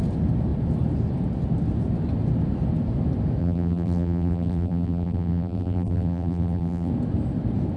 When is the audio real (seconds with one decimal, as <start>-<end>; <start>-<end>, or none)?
0.0-3.4; 6.9-7.8